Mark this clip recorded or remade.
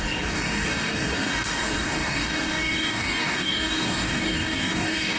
remade